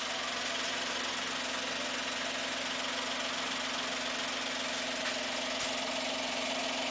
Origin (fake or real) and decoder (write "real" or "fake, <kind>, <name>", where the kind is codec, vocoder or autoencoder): real